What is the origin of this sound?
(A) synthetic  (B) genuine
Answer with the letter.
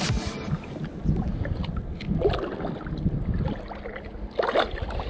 B